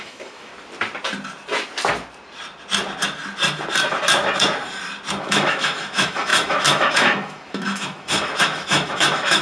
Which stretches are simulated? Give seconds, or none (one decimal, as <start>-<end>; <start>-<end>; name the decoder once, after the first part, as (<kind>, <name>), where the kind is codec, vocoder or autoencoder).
0.0-0.5 (autoencoder, DAC-VAE); 5.2-9.4